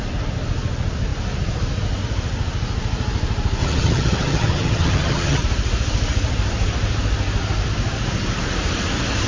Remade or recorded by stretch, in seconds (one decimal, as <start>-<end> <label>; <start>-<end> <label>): 0.0-3.6 recorded; 3.6-5.4 remade; 5.4-9.3 recorded